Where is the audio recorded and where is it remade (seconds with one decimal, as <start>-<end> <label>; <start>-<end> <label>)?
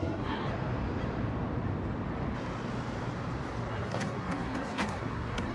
0.0-0.4 remade; 0.4-3.7 recorded; 3.7-5.5 remade